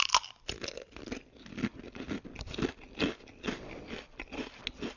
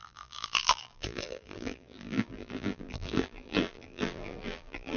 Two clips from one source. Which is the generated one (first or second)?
second